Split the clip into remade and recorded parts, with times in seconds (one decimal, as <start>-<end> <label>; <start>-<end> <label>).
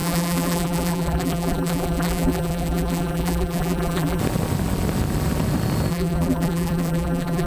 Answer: 0.0-4.2 remade; 4.2-5.9 recorded; 5.9-7.5 remade